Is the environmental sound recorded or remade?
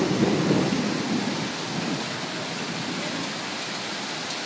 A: recorded